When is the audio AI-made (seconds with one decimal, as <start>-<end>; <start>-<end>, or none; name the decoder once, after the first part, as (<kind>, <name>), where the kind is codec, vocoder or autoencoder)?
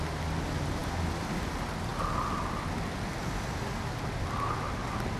none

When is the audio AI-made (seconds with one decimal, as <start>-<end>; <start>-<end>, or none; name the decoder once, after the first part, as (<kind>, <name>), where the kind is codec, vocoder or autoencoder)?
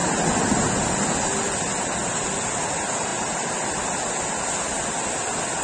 none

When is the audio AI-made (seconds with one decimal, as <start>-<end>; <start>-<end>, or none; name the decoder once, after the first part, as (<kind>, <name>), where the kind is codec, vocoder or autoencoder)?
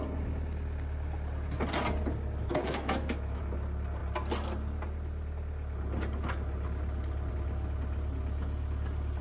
2.5-3.4 (autoencoder, DAC-VAE)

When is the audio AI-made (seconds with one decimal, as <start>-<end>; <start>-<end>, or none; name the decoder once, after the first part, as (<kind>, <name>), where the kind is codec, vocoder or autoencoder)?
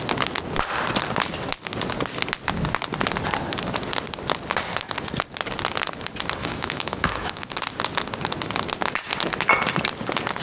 6.4-7.5 (autoencoder, DAC-VAE)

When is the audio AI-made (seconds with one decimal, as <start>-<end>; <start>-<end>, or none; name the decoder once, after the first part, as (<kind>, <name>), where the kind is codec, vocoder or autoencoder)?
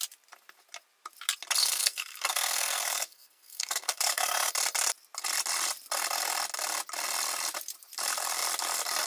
1.6-4.5 (codec, SNAC)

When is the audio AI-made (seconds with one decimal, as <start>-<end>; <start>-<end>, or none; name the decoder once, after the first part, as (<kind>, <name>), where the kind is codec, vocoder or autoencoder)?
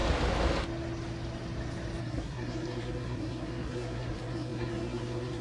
2.0-5.4 (codec, SNAC)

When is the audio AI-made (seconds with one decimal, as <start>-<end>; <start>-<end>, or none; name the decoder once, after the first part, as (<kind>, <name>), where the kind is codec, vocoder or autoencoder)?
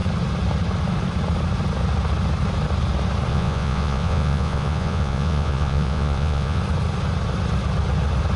3.3-6.6 (vocoder, Vocos)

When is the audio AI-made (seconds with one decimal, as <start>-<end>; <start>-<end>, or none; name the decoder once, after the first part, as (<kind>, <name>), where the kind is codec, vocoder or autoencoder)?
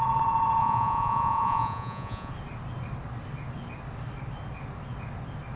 0.6-2.3 (vocoder, Vocos)